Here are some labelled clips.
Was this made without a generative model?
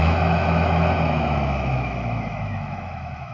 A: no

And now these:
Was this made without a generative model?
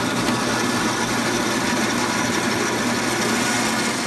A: yes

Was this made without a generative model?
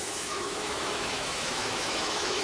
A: no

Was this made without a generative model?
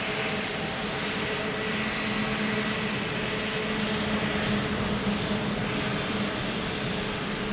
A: yes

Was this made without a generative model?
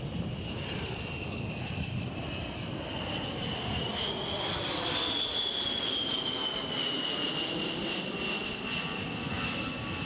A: yes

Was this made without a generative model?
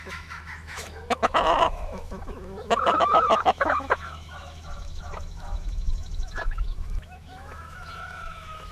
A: no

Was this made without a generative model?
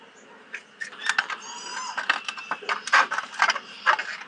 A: yes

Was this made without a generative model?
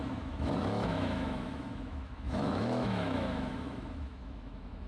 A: no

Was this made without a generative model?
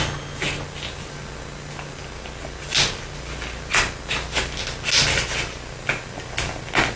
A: yes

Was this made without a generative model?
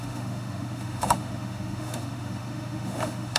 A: no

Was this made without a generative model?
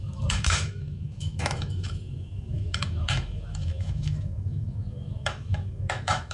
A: no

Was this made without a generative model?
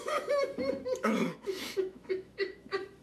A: no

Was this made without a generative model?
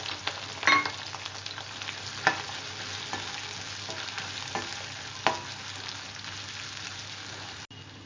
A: yes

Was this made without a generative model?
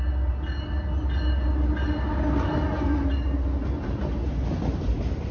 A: yes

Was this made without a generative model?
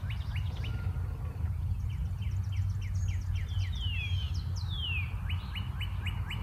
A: yes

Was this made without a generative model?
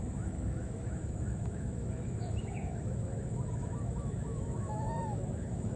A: no